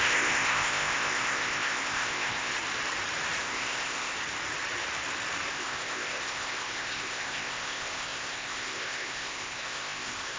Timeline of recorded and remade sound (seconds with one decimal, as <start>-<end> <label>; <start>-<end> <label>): 0.0-2.5 remade; 2.5-3.4 recorded; 3.4-4.1 remade; 4.1-5.5 recorded; 5.5-10.4 remade